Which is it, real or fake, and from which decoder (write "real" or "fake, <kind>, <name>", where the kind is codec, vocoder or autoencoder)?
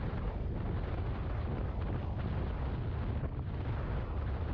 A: real